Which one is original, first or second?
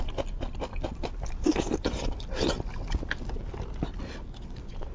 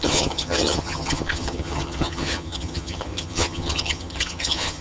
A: first